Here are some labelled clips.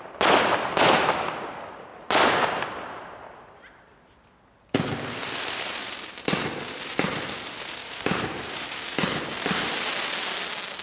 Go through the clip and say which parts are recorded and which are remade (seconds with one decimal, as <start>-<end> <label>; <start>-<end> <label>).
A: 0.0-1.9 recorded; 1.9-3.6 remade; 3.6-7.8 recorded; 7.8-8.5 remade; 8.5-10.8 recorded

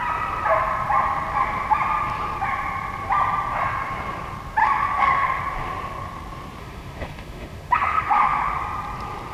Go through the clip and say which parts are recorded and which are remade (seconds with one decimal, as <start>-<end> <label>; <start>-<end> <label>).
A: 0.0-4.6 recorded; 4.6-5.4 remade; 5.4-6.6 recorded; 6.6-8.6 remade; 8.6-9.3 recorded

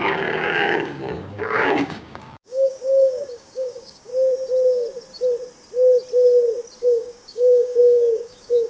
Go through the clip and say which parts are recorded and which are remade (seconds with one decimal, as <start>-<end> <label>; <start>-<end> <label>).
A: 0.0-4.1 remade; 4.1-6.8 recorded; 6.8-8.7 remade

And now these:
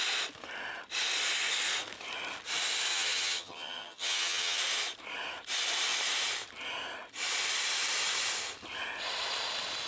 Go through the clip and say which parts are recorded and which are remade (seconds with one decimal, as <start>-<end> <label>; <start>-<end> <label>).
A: 0.0-2.9 recorded; 2.9-4.6 remade; 4.6-9.9 recorded

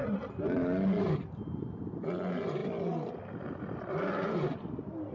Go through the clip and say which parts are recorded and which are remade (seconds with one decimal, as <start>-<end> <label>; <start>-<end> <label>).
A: 0.0-5.1 recorded

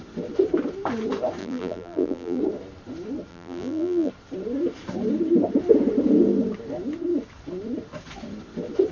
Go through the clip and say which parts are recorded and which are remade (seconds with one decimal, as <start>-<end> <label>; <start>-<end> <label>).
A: 0.0-1.4 recorded; 1.4-2.4 remade; 2.4-3.3 recorded; 3.3-4.1 remade; 4.1-8.9 recorded

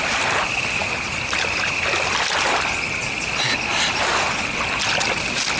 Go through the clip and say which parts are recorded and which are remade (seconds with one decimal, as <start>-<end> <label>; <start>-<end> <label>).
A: 0.0-5.6 recorded

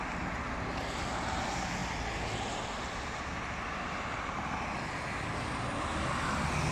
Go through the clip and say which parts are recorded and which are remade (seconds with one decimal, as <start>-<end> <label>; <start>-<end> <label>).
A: 0.0-6.7 recorded